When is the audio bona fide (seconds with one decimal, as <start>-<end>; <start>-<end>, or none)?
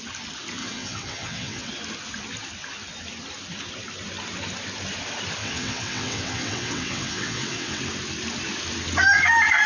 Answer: 0.0-0.6; 1.7-5.4; 7.8-9.7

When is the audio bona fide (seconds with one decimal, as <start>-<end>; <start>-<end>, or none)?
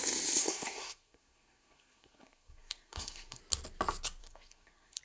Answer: 0.0-0.4; 3.4-4.2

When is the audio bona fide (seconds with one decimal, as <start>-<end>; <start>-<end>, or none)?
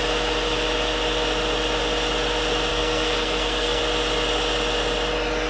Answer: 0.0-2.7; 3.8-5.5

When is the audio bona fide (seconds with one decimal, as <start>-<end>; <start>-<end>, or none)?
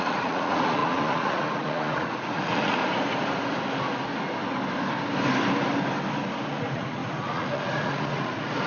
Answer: 2.8-6.5